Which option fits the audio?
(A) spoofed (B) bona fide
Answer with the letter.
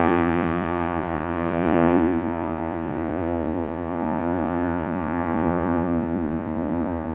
A